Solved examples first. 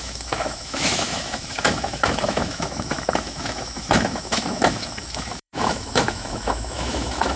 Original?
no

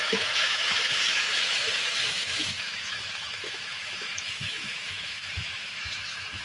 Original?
no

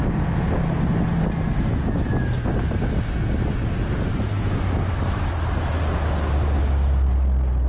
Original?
yes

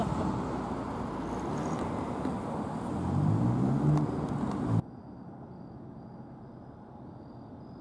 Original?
yes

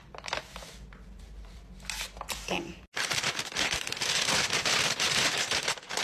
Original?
yes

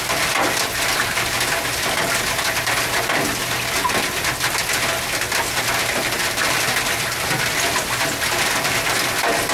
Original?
yes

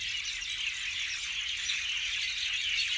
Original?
yes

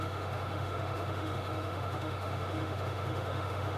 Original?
no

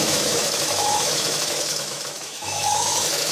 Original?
no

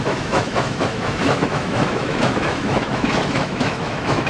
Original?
no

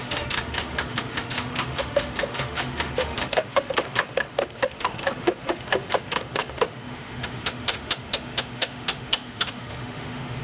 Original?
no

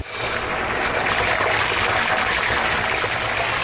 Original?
yes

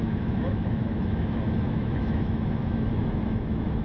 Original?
no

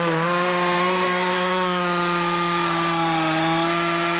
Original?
no